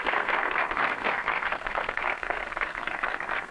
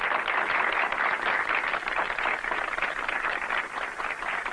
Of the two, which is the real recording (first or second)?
second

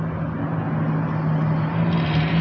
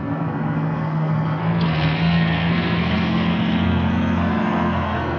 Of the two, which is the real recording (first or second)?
first